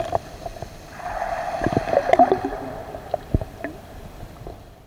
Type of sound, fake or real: fake